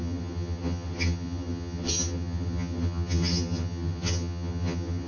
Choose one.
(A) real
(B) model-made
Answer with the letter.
B